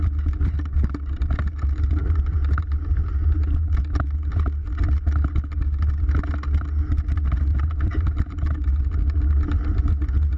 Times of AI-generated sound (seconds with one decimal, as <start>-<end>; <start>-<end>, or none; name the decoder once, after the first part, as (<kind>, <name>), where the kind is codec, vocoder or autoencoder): 0.4-3.8 (vocoder, BigVGAN v2); 7.5-8.8